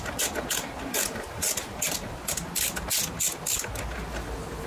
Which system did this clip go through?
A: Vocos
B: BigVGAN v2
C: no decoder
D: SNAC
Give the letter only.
C